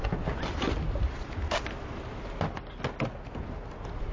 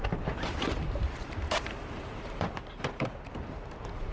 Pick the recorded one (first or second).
first